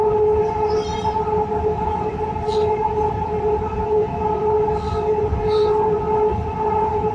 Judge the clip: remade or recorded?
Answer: recorded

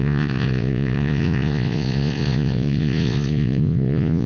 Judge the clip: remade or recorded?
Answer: remade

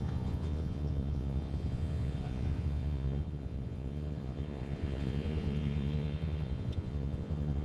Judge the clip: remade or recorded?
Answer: remade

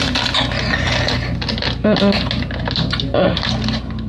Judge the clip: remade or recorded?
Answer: recorded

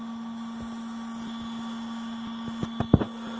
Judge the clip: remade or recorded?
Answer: recorded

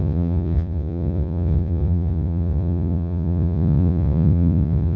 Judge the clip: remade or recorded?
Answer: remade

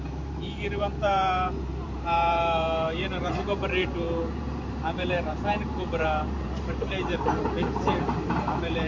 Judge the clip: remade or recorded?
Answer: remade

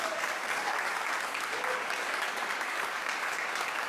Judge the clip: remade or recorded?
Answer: remade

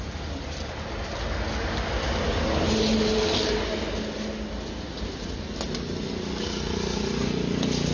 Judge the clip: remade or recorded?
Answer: recorded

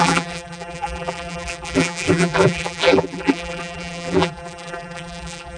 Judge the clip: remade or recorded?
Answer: remade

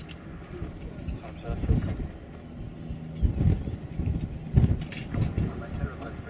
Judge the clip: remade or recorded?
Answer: recorded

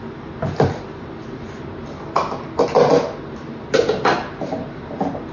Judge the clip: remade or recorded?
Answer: recorded